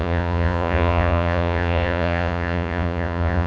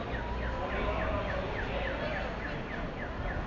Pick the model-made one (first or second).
first